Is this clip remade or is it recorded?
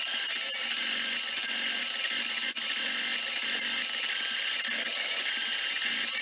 recorded